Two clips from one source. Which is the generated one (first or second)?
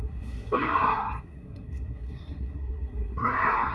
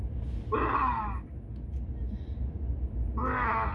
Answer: first